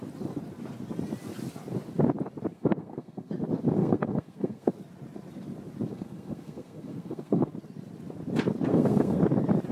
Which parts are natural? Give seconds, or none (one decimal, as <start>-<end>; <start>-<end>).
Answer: 0.0-2.5; 3.3-3.8; 4.7-5.9; 7.5-8.7; 9.2-9.7